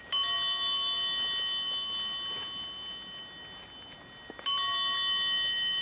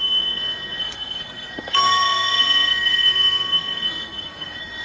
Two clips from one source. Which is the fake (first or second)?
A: second